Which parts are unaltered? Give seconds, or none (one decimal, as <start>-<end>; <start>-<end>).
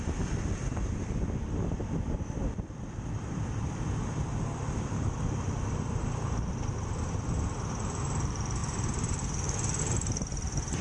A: 6.0-6.6